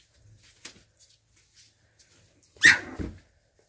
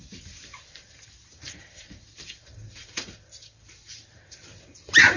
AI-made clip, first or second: second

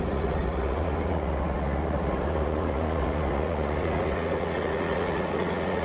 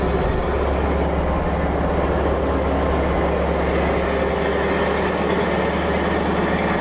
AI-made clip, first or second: first